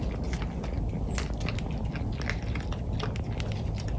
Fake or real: real